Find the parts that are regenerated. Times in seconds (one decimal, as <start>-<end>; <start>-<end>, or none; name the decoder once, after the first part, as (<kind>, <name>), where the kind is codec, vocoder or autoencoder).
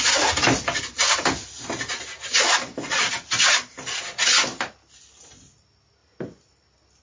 none